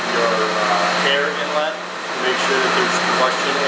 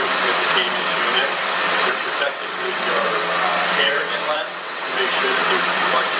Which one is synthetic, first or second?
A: second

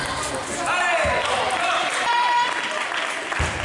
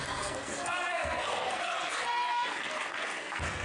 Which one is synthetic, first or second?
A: second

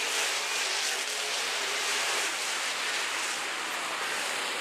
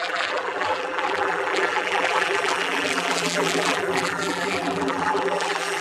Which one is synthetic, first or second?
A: second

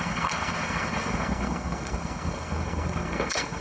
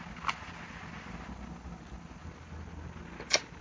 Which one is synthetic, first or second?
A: first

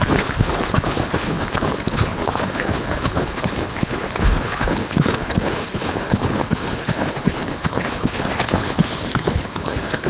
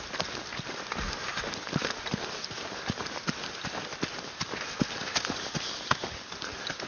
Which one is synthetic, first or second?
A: first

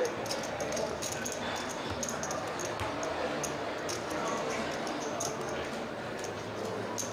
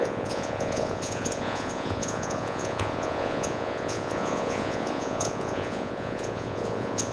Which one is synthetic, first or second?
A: second